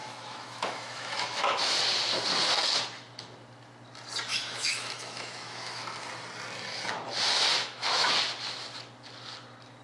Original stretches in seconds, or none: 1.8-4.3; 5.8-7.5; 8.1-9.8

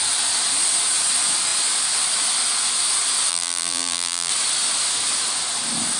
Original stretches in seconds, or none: 0.0-3.3; 4.3-6.0

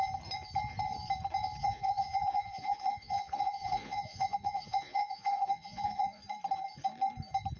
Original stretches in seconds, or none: 0.0-1.6; 6.2-7.6

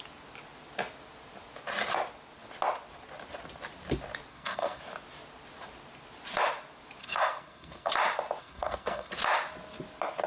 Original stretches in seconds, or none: 0.0-4.3; 4.8-7.0; 7.9-8.4; 9.1-10.3

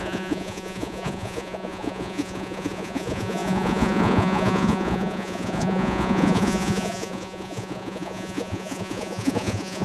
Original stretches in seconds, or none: none

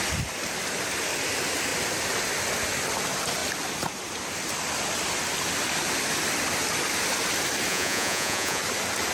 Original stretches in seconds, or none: 0.0-7.7; 8.6-9.1

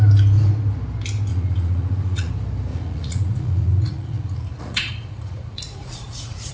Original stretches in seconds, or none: 0.0-1.3; 2.3-2.7

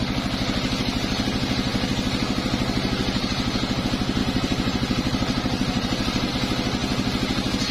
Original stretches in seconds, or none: 0.0-4.2; 6.3-7.7